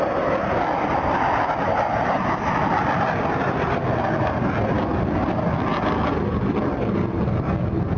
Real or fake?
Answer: real